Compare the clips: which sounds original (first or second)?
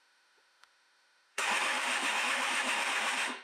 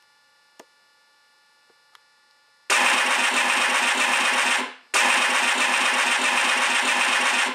second